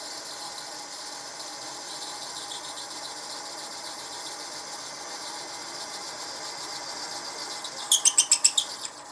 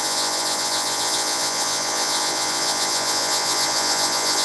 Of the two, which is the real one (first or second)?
first